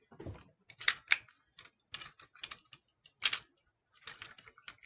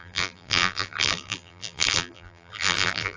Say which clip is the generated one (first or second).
second